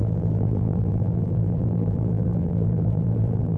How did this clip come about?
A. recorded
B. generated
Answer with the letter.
B